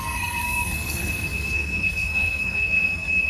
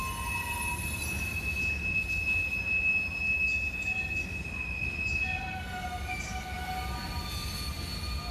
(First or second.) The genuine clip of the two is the second